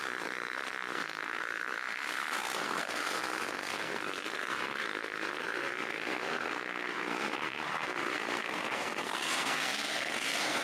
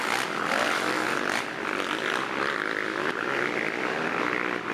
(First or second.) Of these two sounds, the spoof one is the first